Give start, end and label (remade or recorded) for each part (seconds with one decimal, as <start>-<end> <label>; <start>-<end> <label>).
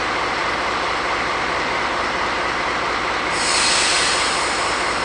0.0-5.0 recorded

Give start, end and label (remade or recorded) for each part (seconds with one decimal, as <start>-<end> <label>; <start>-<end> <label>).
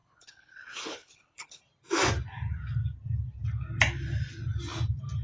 0.0-1.6 remade; 1.6-5.2 recorded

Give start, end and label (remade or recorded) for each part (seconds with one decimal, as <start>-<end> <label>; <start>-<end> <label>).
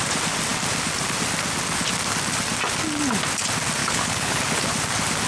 0.0-3.8 recorded; 3.8-4.4 remade; 4.4-5.3 recorded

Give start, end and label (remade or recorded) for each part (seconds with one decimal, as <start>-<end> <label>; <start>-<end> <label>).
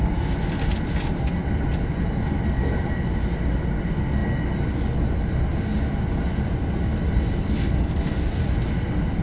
0.0-9.2 recorded